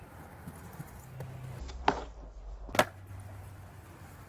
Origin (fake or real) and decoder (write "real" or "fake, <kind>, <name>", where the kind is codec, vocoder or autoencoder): real